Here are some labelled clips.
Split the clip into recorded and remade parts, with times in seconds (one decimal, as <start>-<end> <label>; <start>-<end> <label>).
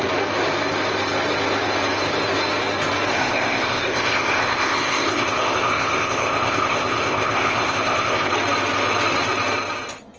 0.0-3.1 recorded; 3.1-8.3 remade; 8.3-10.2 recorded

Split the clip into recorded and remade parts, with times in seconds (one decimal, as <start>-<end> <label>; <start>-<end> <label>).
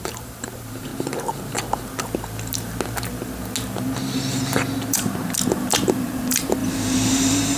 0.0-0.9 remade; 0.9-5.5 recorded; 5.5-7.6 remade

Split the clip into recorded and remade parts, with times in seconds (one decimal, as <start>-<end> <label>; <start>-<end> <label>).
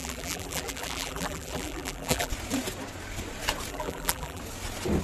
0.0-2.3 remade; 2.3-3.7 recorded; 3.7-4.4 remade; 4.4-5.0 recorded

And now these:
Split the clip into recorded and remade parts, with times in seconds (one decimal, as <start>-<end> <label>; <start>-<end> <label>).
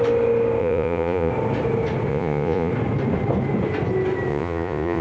0.0-0.6 recorded; 0.6-1.3 remade; 1.3-2.1 recorded; 2.1-2.7 remade; 2.7-4.3 recorded; 4.3-5.0 remade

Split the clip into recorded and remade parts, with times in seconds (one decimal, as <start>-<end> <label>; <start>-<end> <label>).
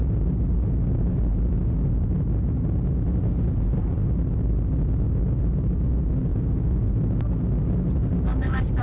0.0-6.3 recorded; 6.3-6.9 remade; 6.9-8.8 recorded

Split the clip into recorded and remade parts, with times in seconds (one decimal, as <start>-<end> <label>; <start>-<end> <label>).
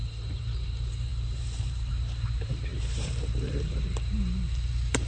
0.0-5.1 remade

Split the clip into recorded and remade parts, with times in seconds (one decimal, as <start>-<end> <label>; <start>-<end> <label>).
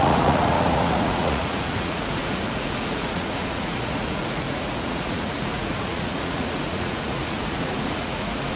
0.0-8.6 remade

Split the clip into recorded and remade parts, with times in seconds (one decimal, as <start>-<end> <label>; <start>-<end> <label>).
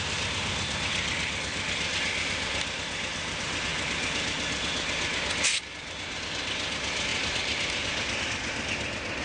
0.0-9.2 recorded